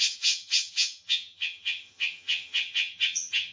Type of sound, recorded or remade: remade